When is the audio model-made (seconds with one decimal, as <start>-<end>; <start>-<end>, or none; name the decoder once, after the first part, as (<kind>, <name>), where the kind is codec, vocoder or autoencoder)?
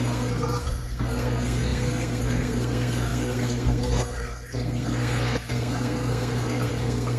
0.0-7.2 (codec, SNAC)